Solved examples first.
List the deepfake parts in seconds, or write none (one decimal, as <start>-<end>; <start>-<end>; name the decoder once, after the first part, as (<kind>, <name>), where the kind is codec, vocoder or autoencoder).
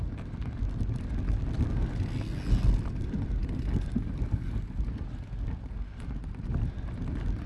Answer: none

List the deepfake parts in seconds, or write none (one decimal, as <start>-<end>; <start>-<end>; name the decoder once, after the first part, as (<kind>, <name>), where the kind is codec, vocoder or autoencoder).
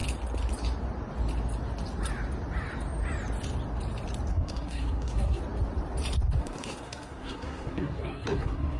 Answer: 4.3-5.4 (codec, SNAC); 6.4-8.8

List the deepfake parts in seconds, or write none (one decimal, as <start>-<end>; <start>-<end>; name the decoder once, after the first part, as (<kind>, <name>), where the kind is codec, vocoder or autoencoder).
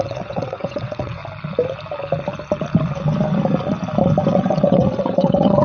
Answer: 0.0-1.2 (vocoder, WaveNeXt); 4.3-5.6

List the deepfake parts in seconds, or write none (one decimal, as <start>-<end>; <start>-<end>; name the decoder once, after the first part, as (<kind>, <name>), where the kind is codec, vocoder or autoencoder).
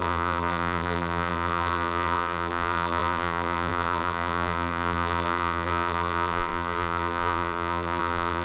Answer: 0.0-8.4 (vocoder, BigVGAN v2)